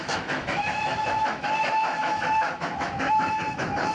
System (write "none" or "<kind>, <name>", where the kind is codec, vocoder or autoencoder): autoencoder, DAC-VAE